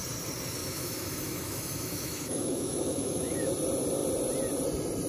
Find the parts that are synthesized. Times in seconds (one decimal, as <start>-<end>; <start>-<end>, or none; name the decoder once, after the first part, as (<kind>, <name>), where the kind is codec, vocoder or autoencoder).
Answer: 0.6-3.5 (autoencoder, DAC-VAE)